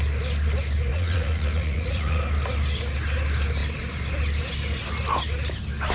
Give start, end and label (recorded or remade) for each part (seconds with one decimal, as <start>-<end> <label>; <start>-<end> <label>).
0.0-0.9 recorded; 0.9-2.2 remade; 2.2-5.9 recorded